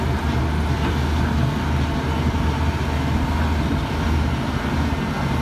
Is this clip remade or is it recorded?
recorded